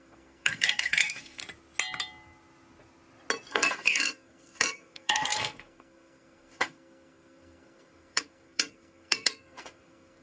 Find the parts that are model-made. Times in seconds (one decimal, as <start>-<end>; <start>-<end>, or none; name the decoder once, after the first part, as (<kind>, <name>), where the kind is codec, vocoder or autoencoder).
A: 0.0-1.4 (codec, SNAC); 3.5-10.2